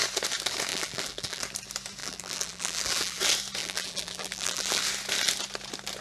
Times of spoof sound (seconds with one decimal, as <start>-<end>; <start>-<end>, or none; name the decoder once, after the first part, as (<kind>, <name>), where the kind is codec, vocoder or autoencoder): 0.7-1.4 (vocoder, BigVGAN v2); 2.0-3.2; 3.6-4.8

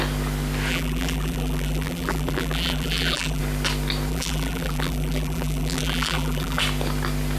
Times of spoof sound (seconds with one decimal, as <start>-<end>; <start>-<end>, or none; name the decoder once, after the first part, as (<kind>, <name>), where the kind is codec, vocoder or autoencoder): 0.7-3.4 (vocoder, BigVGAN v2); 4.1-6.6

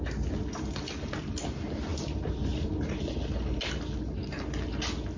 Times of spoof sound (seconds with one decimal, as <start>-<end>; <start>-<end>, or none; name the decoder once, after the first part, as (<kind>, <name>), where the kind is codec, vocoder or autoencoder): 0.4-1.1 (vocoder, BigVGAN v2); 1.9-3.6

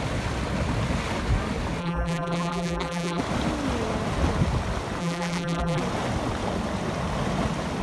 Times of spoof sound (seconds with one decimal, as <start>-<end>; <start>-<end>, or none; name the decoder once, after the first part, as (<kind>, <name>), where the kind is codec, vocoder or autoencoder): 1.8-3.2 (vocoder, BigVGAN v2); 5.0-5.8

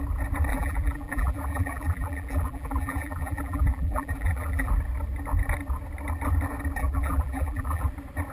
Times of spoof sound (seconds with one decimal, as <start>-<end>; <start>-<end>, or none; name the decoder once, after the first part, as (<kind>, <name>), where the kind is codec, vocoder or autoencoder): 0.5-4.7 (vocoder, BigVGAN v2); 6.8-7.9

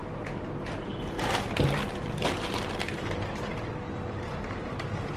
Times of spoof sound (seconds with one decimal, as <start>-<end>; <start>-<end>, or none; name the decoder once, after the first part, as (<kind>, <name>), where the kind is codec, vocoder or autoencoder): 3.0-3.5 (vocoder, BigVGAN v2); 4.1-5.2